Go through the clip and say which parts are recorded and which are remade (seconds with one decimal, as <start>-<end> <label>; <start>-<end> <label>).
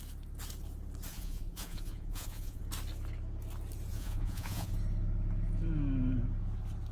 0.0-1.1 recorded; 1.1-2.6 remade; 2.6-3.9 recorded; 3.9-4.7 remade; 4.7-6.9 recorded